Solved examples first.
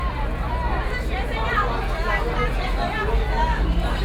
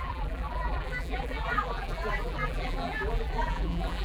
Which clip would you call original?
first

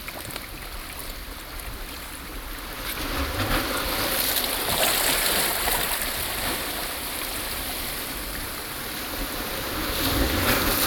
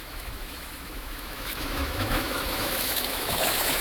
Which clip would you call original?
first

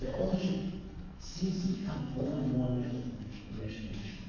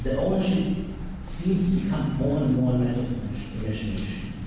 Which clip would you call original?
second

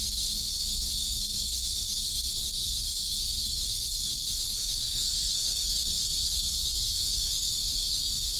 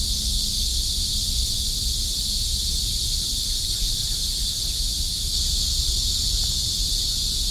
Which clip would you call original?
second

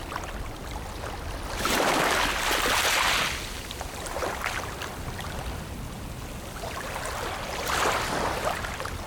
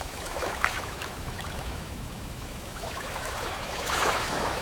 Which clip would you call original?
first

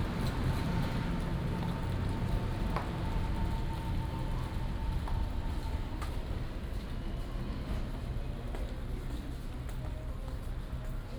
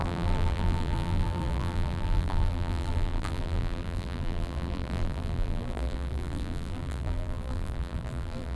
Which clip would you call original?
first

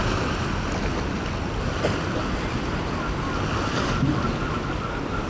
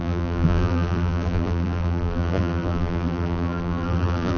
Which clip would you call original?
first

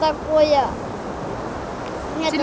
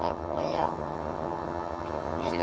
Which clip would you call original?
first